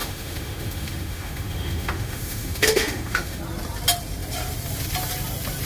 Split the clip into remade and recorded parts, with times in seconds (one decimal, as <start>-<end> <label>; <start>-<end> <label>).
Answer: 0.0-3.4 remade; 3.4-5.7 recorded